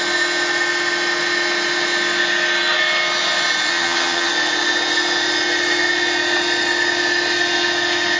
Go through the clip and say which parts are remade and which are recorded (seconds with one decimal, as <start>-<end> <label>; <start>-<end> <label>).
0.0-3.7 recorded; 3.7-4.3 remade; 4.3-8.2 recorded

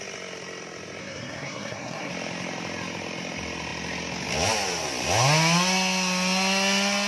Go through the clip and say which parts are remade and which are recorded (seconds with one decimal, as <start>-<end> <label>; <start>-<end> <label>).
0.0-1.0 recorded; 1.0-2.1 remade; 2.1-7.1 recorded

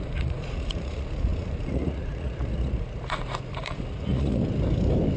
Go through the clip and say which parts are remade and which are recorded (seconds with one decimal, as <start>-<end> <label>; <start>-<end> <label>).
0.0-4.4 remade; 4.4-5.2 recorded

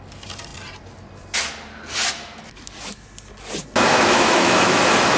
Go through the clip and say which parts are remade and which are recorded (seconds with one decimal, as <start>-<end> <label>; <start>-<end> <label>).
0.0-3.9 recorded; 3.9-4.8 remade; 4.8-5.2 recorded

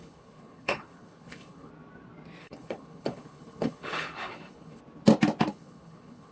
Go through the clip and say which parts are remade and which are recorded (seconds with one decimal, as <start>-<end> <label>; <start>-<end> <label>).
0.0-1.7 remade; 1.7-2.4 recorded; 2.4-4.8 remade; 4.8-5.5 recorded; 5.5-6.3 remade

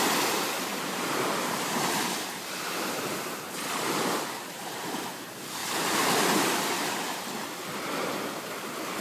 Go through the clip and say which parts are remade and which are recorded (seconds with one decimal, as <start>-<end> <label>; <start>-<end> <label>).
0.0-0.7 recorded; 0.7-5.1 remade; 5.1-5.6 recorded; 5.6-7.2 remade; 7.2-9.0 recorded

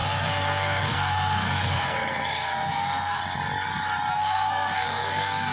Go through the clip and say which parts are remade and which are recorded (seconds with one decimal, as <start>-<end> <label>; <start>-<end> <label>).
0.0-3.2 remade; 3.2-4.1 recorded; 4.1-5.5 remade

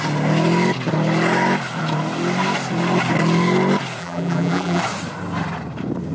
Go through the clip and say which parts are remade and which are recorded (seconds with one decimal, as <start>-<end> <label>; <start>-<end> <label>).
0.0-4.0 recorded; 4.0-4.8 remade; 4.8-6.1 recorded